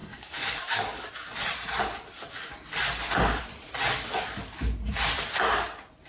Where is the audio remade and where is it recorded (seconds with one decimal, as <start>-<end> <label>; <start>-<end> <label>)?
0.0-1.1 remade; 1.1-6.1 recorded